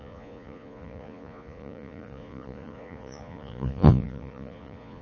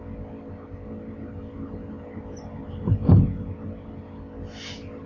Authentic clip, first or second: second